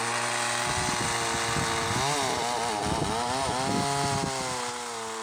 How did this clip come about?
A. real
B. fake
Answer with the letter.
A